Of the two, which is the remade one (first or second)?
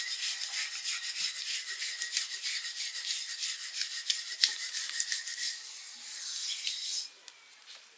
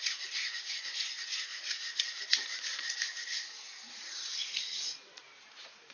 second